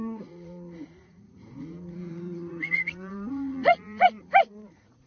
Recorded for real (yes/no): no